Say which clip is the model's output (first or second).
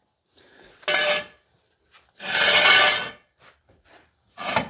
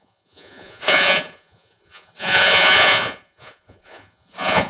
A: second